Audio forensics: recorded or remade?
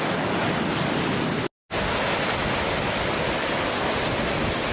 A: recorded